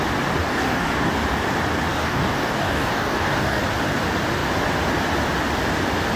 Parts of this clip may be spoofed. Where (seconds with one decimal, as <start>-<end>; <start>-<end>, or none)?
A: 0.4-1.1; 1.9-3.6